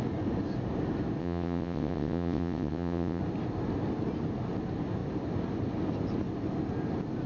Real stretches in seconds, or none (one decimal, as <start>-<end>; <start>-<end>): 0.0-1.2; 3.2-7.3

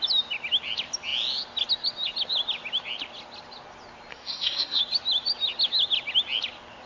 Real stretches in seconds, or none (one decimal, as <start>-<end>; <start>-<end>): 0.0-4.1; 4.8-6.9

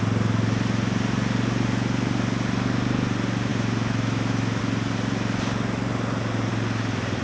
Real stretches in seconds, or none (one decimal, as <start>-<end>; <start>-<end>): 0.0-3.5; 4.6-7.2

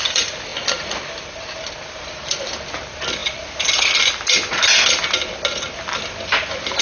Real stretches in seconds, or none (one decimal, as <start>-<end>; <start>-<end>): 0.0-6.8